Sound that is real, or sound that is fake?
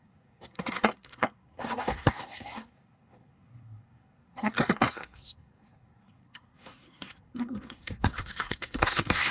fake